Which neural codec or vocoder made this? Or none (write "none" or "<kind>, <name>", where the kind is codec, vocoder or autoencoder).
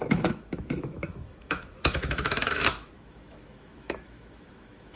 autoencoder, DAC-VAE